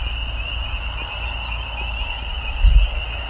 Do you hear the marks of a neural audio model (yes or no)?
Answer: no